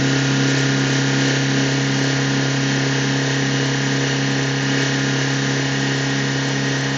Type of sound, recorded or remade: recorded